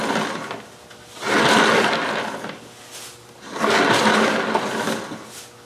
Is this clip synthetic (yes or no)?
no